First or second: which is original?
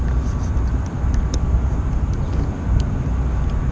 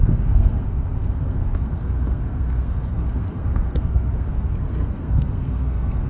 first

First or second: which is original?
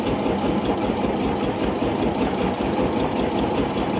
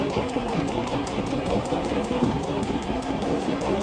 first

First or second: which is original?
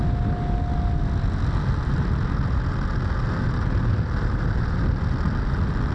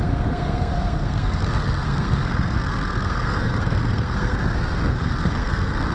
first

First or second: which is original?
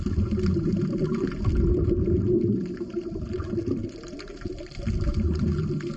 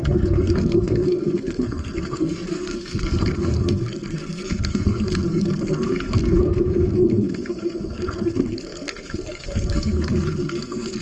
first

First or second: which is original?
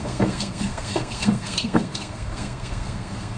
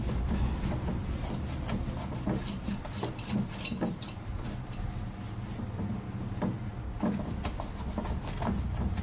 second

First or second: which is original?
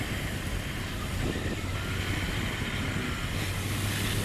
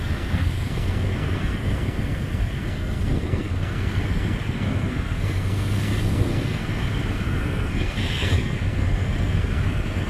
first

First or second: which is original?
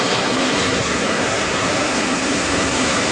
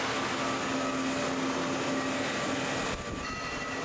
second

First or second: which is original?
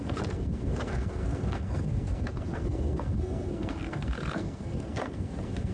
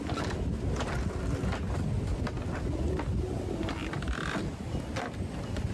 second